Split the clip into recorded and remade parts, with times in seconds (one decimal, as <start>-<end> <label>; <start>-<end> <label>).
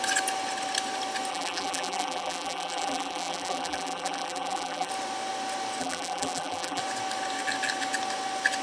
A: 0.0-1.3 recorded; 1.3-4.9 remade; 4.9-5.8 recorded; 5.8-6.8 remade; 6.8-8.6 recorded